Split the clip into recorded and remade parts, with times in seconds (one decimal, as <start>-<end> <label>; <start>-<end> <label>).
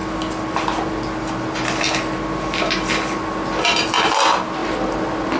0.0-5.4 recorded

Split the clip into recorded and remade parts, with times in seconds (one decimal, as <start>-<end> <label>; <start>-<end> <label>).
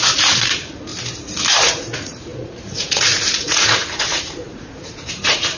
0.0-0.9 remade; 0.9-1.6 recorded; 1.6-5.6 remade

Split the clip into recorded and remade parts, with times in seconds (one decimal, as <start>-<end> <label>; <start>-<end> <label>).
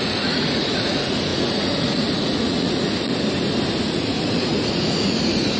0.0-3.1 remade; 3.1-3.8 recorded; 3.8-5.6 remade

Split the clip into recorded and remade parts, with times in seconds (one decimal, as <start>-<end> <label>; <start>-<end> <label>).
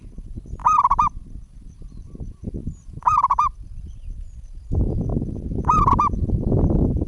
0.0-7.1 recorded